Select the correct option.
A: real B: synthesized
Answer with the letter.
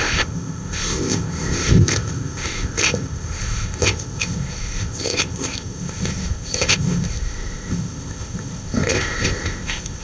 B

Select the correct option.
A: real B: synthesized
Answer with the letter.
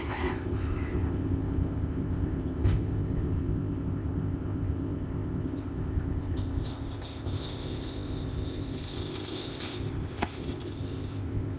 B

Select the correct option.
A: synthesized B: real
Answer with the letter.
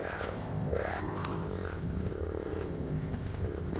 A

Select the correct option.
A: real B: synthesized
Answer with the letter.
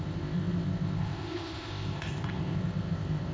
B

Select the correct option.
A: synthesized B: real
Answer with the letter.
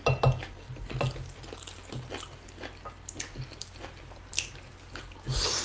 B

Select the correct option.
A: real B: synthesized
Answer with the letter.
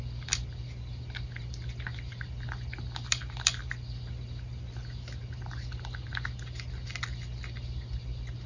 A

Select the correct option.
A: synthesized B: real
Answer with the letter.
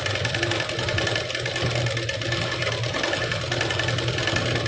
B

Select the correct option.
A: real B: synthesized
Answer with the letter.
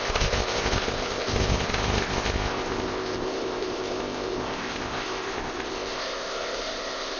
B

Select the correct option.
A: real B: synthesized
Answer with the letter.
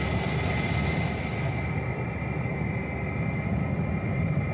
A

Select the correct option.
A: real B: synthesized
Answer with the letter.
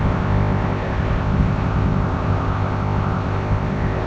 B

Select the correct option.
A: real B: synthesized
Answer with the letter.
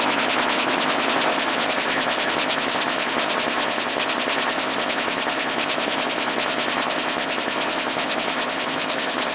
B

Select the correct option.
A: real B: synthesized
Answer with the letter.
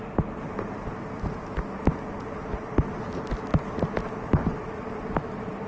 A